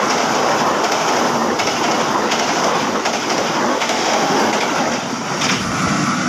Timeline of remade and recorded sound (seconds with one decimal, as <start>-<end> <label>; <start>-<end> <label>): 0.0-3.7 recorded; 3.7-4.4 remade; 4.4-6.3 recorded